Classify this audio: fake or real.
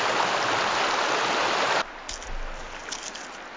real